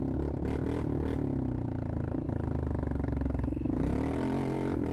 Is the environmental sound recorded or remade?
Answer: recorded